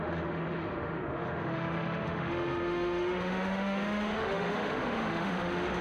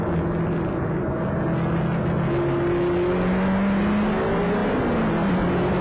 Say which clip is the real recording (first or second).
second